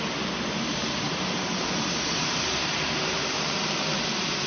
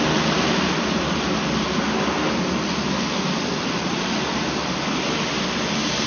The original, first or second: second